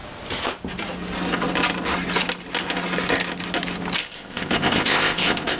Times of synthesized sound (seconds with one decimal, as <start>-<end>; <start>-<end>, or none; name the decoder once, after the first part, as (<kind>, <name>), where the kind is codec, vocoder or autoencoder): 4.0-5.6 (codec, ZipCodec)